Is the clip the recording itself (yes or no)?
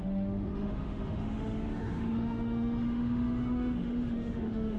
no